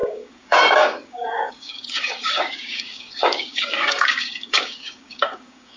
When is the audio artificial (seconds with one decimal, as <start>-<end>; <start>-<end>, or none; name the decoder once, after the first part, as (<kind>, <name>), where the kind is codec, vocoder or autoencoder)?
0.0-5.8 (codec, DAC)